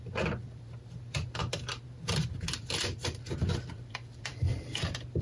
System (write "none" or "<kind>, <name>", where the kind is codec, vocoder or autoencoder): vocoder, BigVGAN v2